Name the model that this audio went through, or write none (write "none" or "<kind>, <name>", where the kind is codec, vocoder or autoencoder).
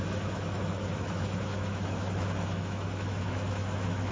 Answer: autoencoder, DAC-VAE